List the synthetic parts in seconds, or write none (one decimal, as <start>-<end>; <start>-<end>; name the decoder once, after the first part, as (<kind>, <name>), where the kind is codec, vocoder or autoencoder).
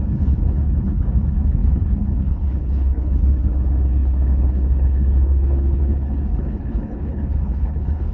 0.0-8.1 (codec, HILCodec)